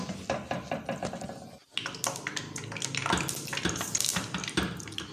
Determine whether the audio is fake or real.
real